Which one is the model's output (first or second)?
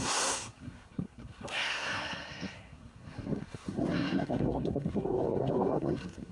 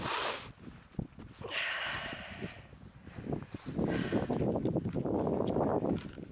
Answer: first